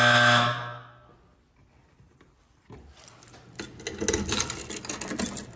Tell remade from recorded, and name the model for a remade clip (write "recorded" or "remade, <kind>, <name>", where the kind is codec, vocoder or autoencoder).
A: recorded